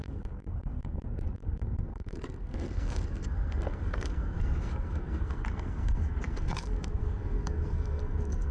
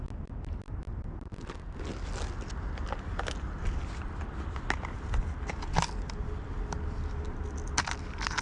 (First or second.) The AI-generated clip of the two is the first